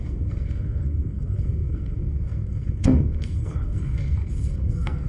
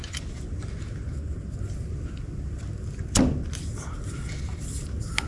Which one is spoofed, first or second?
first